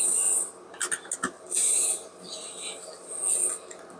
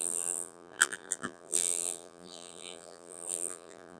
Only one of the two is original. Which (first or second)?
first